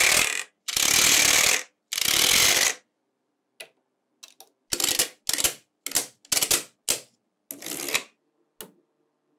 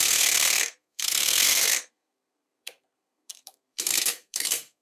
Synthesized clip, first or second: second